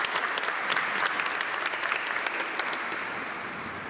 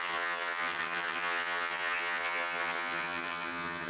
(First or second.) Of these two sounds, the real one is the first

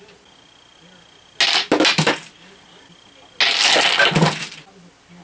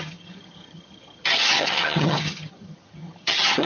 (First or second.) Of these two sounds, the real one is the first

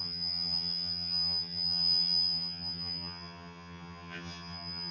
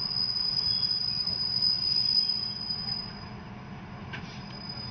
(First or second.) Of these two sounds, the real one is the second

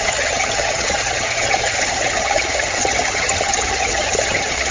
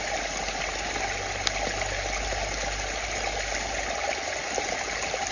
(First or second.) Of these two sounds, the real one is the second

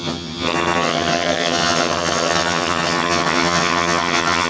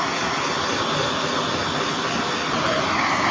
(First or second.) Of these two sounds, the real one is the second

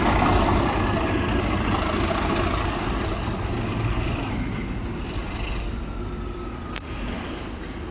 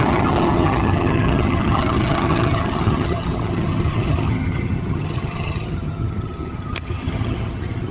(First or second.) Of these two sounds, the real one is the first